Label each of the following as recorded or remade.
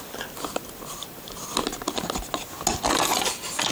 recorded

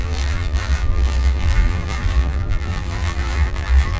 remade